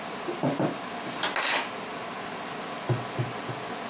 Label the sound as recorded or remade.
recorded